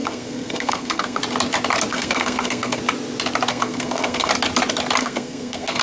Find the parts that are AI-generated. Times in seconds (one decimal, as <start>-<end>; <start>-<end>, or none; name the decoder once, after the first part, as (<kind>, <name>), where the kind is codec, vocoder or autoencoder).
0.0-1.2 (codec, SNAC); 1.9-2.8; 3.5-4.3; 5.0-5.8